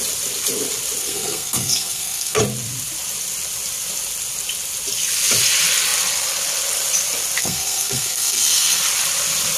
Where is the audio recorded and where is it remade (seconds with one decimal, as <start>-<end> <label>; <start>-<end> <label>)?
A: 0.0-1.0 recorded; 1.0-2.4 remade; 2.4-7.4 recorded; 7.4-8.8 remade; 8.8-9.6 recorded